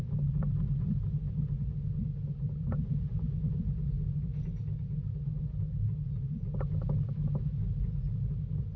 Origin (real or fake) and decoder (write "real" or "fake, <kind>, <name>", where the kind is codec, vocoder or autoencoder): real